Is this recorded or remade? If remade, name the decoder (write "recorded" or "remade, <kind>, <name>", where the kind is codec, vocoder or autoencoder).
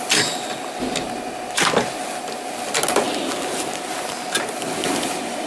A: recorded